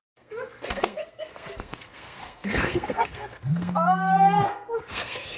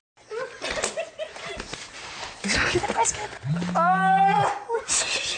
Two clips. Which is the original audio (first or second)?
second